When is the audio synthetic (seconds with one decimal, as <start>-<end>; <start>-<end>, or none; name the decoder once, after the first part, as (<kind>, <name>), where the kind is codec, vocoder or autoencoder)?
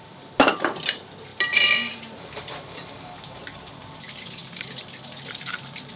0.0-6.0 (vocoder, BigVGAN v2)